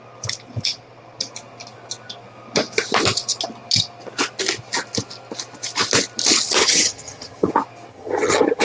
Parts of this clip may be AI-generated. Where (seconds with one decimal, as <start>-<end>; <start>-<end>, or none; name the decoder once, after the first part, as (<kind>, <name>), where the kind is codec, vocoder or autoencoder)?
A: 6.6-7.5 (vocoder, HiFi-GAN); 7.9-8.6